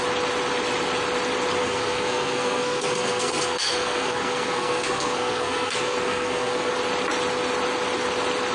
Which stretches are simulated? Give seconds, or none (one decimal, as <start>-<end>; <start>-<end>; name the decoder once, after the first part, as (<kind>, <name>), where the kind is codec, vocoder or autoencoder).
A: 1.6-6.7 (codec, SNAC)